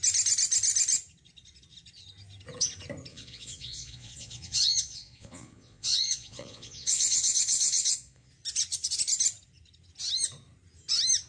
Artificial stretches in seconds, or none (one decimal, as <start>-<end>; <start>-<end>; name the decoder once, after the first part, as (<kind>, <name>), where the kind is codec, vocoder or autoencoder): 3.1-8.3 (vocoder, Vocos)